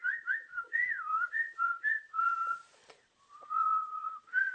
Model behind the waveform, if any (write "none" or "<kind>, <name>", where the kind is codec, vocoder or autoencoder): vocoder, Vocos